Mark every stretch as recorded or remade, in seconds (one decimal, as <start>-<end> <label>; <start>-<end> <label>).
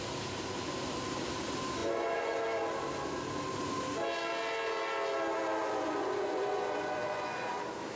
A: 0.0-1.8 recorded; 1.8-2.4 remade; 2.4-5.6 recorded; 5.6-7.5 remade; 7.5-8.0 recorded